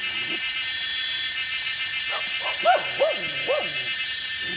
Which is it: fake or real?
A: real